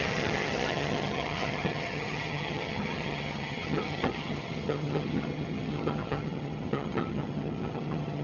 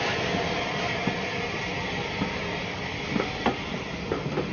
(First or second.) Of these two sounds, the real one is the second